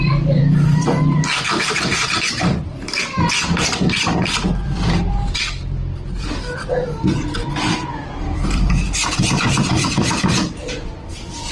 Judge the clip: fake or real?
fake